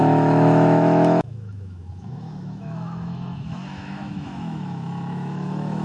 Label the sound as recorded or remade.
remade